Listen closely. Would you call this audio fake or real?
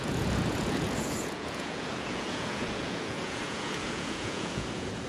fake